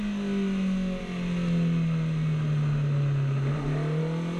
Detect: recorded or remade recorded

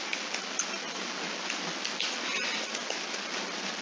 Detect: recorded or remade recorded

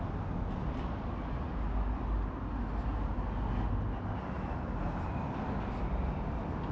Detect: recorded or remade recorded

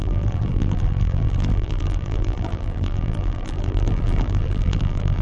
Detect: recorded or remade remade